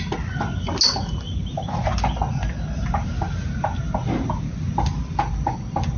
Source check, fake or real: real